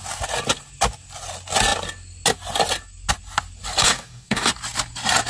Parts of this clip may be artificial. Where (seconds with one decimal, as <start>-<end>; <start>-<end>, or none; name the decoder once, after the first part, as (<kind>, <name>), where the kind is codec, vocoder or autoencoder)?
3.8-4.5 (codec, DAC)